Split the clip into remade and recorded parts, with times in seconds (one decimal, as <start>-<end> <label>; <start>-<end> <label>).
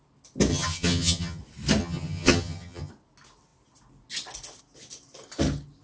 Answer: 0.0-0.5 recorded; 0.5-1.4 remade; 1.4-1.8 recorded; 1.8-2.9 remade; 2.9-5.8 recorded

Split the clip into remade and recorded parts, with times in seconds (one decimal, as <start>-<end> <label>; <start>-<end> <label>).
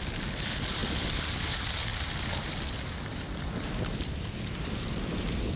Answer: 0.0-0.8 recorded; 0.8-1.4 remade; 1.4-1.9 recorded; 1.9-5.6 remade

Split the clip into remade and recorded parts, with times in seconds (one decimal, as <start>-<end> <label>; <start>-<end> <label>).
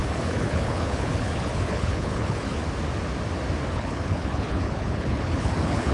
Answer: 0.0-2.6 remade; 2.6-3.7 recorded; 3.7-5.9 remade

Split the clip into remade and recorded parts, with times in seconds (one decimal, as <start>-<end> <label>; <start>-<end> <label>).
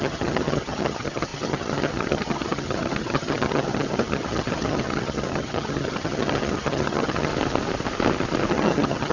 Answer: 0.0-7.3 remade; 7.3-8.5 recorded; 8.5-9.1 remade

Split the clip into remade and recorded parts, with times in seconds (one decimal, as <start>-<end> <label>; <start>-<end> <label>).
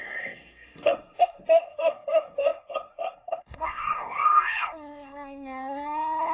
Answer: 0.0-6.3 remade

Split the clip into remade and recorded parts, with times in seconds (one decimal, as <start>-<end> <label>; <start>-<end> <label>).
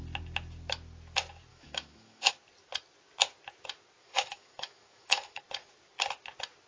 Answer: 0.0-1.5 recorded; 1.5-2.3 remade; 2.3-4.0 recorded; 4.0-5.4 remade; 5.4-6.7 recorded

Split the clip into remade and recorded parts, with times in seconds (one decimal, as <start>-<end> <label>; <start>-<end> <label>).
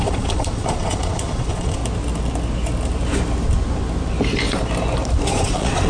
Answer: 0.0-1.8 remade; 1.8-5.3 recorded; 5.3-5.9 remade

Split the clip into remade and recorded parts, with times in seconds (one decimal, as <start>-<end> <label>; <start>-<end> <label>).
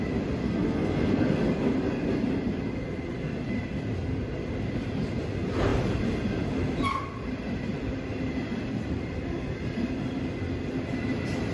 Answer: 0.0-0.4 recorded; 0.4-1.4 remade; 1.4-11.5 recorded